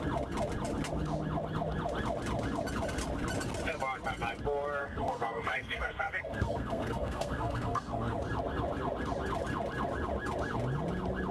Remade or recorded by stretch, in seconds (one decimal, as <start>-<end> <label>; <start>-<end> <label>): 0.0-4.8 recorded; 4.8-8.1 remade; 8.1-11.3 recorded